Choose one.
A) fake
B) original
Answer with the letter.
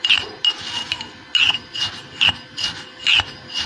B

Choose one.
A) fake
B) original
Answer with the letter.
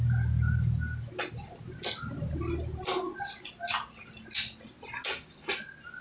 B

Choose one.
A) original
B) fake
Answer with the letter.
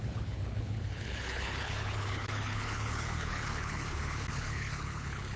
B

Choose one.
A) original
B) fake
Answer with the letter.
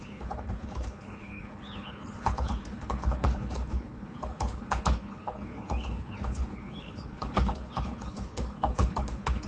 B